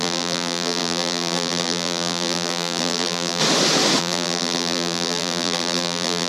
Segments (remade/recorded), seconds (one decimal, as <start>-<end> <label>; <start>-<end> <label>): 0.0-3.4 remade; 3.4-4.0 recorded; 4.0-6.3 remade